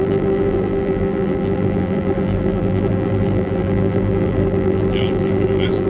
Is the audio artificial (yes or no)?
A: yes